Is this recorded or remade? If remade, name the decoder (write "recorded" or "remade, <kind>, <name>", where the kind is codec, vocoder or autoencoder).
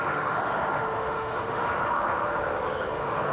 remade, autoencoder, DAC-VAE